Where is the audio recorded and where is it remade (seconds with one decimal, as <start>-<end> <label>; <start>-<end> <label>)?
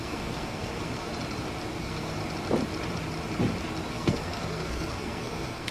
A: 0.0-1.1 remade; 1.1-1.8 recorded; 1.8-2.2 remade; 2.2-3.9 recorded; 3.9-5.7 remade